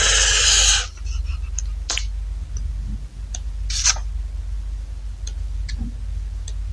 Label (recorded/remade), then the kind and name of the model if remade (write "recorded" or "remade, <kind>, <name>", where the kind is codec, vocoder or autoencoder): recorded